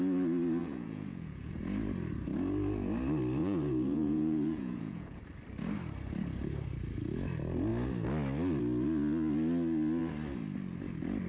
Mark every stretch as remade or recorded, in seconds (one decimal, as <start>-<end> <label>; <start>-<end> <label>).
0.0-0.6 recorded; 0.6-1.5 remade; 1.5-3.4 recorded; 3.4-5.2 remade; 5.2-11.3 recorded